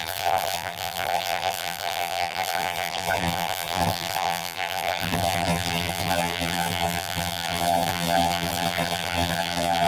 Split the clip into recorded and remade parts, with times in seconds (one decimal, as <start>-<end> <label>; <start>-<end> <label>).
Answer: 0.0-9.9 remade